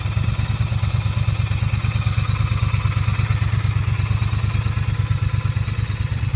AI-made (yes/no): no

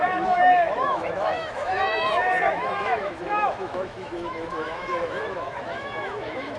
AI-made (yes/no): yes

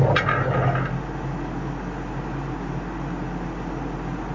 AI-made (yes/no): no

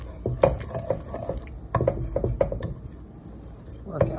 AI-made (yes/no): no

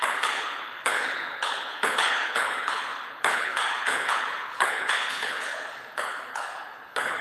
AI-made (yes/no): yes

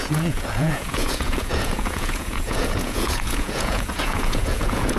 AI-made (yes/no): yes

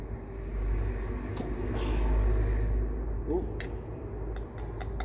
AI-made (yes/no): no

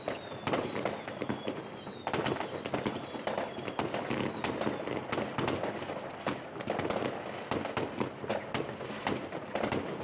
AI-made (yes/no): no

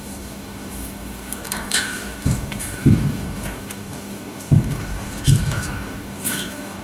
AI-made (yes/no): yes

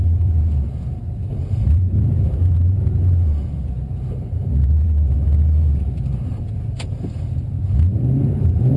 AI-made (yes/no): yes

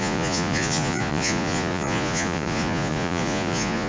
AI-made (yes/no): yes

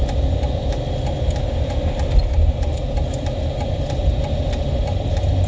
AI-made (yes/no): no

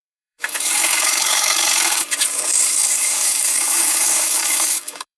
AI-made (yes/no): yes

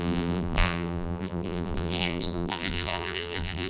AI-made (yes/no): yes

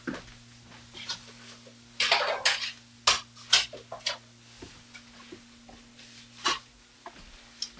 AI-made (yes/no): no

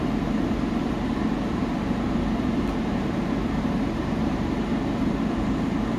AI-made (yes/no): yes